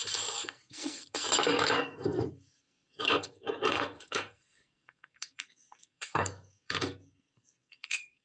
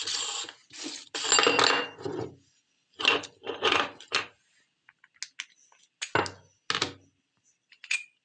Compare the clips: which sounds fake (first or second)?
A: first